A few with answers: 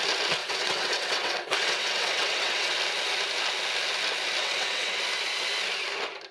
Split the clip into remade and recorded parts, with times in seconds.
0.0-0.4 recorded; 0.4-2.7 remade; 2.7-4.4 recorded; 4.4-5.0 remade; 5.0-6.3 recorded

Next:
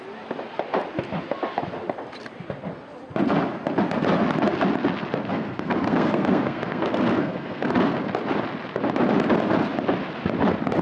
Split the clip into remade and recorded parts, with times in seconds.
0.0-5.3 recorded; 5.3-8.0 remade; 8.0-10.8 recorded